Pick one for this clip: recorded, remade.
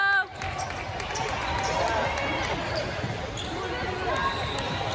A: recorded